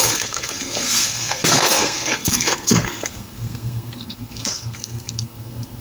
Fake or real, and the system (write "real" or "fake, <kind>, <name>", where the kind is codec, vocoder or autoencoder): fake, codec, SNAC